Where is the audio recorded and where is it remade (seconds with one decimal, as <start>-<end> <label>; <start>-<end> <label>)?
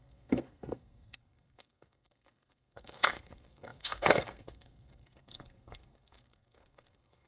0.0-7.3 remade